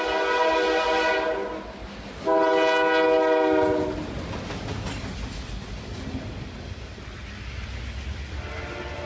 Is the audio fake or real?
real